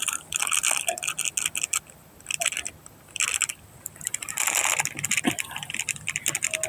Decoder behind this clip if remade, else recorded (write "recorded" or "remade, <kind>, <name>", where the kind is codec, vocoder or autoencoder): recorded